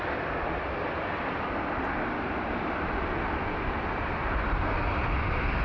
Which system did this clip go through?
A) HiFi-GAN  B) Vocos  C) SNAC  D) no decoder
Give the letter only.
D